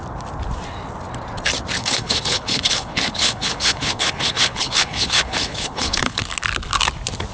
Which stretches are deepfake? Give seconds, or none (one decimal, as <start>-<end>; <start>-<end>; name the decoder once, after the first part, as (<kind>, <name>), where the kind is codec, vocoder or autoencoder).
1.8-6.2 (codec, HILCodec)